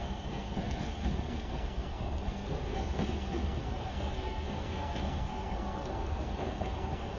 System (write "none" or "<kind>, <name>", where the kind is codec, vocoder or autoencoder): codec, SNAC